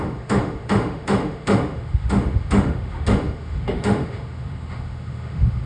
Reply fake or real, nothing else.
fake